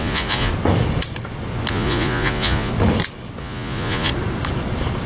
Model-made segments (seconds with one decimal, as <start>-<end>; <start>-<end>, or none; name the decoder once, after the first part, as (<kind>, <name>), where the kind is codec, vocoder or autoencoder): 0.0-0.5 (vocoder, Vocos); 1.7-2.7; 3.4-4.1